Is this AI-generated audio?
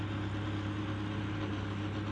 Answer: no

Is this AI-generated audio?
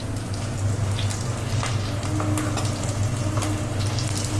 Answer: no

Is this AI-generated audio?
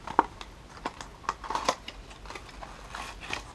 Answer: no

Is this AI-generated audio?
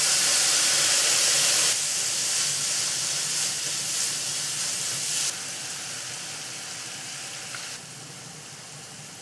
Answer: no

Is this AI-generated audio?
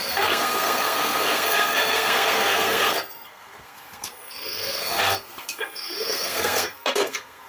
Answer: yes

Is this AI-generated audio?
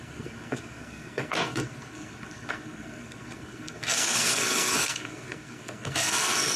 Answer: yes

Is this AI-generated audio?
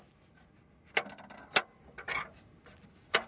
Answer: no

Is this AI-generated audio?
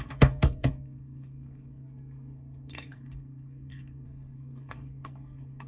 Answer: yes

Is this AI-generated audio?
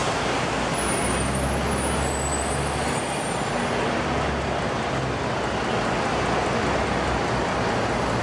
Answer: no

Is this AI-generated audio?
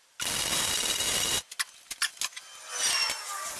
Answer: no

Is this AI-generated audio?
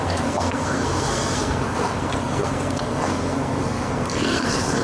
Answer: yes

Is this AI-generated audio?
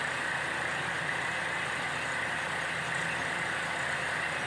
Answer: no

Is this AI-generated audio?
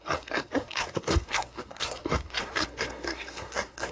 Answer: yes